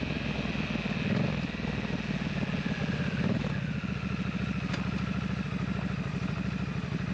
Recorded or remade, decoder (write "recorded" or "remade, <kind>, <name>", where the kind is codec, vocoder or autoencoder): recorded